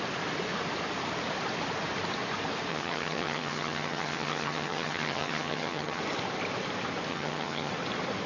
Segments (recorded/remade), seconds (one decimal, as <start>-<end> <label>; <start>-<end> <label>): 0.0-2.7 recorded; 2.7-6.0 remade; 6.0-7.1 recorded; 7.1-7.7 remade; 7.7-8.3 recorded